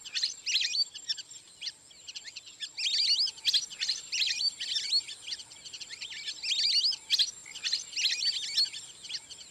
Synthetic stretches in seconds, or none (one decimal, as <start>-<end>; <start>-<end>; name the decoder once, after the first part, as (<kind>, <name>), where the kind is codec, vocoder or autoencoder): 3.7-4.9 (vocoder, BigVGAN v2)